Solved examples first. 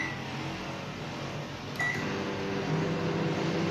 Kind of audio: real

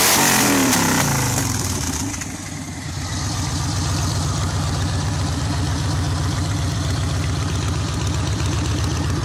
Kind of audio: fake